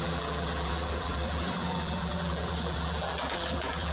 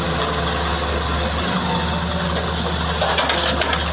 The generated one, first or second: first